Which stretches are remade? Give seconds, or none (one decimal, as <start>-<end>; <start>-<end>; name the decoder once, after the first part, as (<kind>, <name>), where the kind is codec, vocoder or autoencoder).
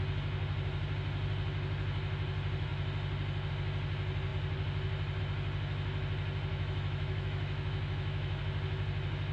6.5-8.4 (autoencoder, DAC-VAE)